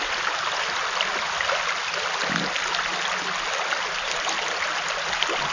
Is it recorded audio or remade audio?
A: recorded